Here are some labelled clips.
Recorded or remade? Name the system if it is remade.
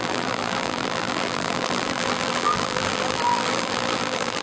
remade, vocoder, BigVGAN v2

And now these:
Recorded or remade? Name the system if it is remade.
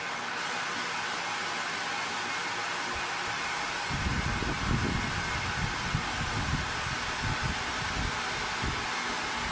recorded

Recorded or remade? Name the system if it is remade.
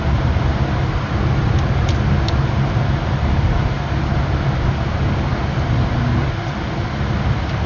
recorded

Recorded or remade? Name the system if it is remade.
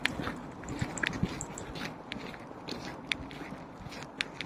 recorded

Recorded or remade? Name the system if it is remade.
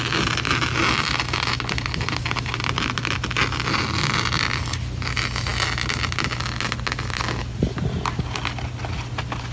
recorded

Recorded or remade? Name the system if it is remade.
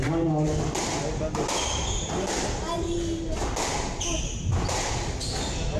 recorded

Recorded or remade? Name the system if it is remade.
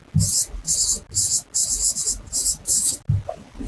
recorded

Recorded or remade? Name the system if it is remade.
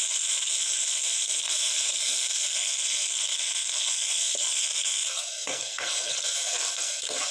remade, codec, SNAC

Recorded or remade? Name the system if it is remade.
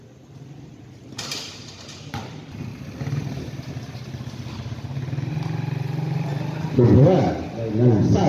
recorded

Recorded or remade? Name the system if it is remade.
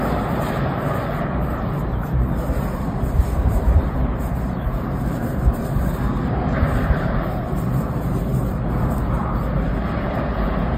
remade, vocoder, BigVGAN v2